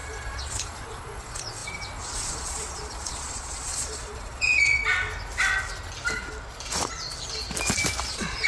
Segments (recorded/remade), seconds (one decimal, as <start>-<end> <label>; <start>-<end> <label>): 0.0-4.8 remade; 4.8-8.1 recorded; 8.1-8.5 remade